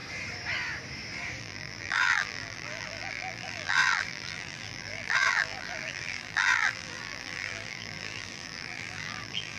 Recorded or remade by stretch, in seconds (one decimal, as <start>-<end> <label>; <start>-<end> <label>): 0.0-1.4 recorded; 1.4-9.6 remade